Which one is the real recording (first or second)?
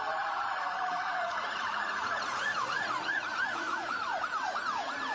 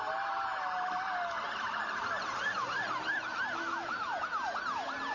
second